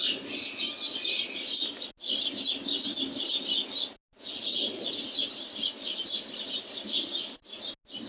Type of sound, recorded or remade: recorded